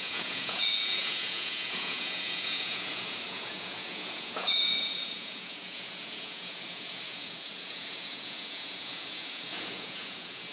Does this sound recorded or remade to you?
remade